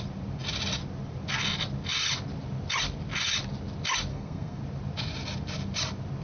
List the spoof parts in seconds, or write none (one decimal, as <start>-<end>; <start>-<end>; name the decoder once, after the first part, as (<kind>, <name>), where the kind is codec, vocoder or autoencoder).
4.1-4.6 (codec, SNAC)